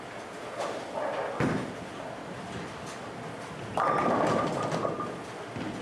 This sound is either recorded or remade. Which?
recorded